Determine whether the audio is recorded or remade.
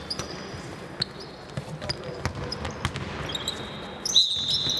recorded